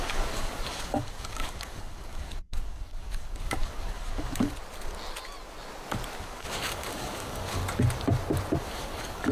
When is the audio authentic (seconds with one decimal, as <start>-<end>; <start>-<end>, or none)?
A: 4.5-6.2; 7.6-8.6